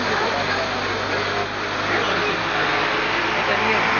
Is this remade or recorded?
recorded